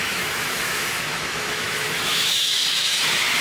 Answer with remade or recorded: remade